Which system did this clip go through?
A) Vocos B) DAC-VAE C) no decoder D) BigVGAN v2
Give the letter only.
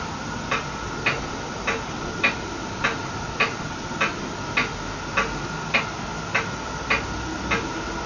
C